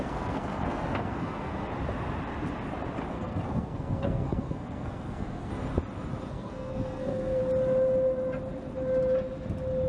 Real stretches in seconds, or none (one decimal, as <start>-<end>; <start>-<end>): 1.7-3.1; 5.5-6.3; 7.4-9.9